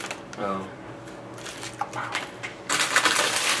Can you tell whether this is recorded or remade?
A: recorded